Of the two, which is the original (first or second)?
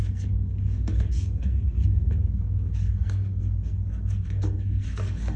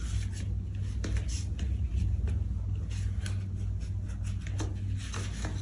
second